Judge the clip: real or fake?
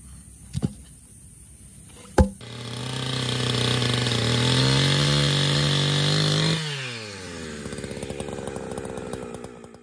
real